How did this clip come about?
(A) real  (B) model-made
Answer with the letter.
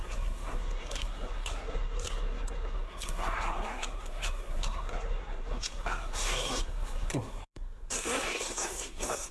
B